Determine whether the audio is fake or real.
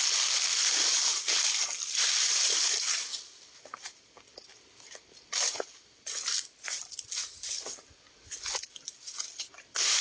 real